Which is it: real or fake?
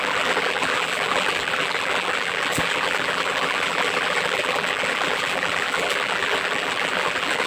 fake